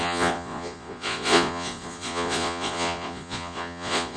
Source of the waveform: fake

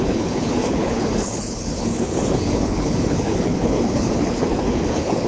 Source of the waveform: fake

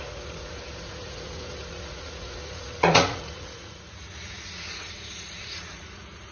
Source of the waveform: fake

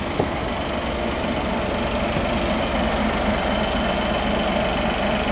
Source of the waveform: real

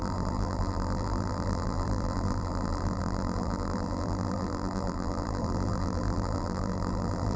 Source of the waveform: fake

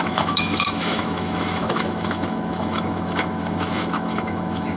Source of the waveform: fake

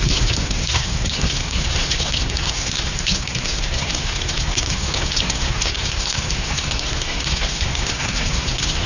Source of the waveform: fake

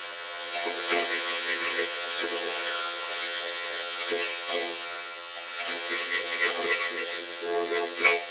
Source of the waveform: fake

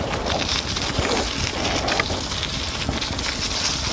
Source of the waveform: real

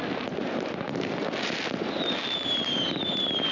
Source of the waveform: real